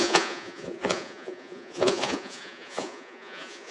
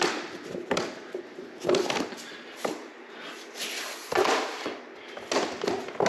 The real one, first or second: second